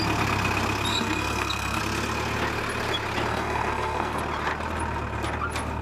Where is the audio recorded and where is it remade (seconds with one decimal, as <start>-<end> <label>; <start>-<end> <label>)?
0.0-0.9 recorded; 0.9-1.8 remade; 1.8-3.3 recorded; 3.3-4.2 remade; 4.2-5.8 recorded

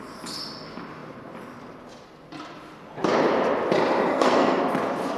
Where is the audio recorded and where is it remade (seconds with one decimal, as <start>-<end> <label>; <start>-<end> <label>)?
0.0-4.1 recorded; 4.1-4.6 remade; 4.6-5.2 recorded

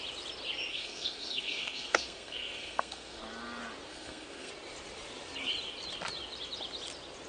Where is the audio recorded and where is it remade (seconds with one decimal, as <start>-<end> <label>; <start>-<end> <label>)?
0.0-0.7 recorded; 0.7-3.2 remade; 3.2-3.9 recorded; 3.9-4.5 remade; 4.5-7.3 recorded

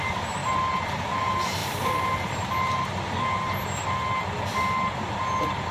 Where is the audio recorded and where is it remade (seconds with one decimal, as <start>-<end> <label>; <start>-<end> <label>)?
0.0-5.7 recorded

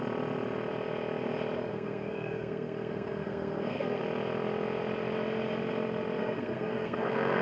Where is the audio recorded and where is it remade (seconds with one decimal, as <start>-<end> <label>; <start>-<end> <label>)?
0.0-1.7 recorded; 1.7-4.0 remade; 4.0-6.2 recorded; 6.2-7.4 remade

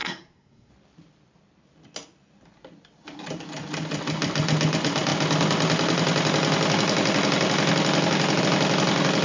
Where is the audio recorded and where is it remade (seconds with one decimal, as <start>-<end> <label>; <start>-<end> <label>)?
0.0-0.7 remade; 0.7-9.2 recorded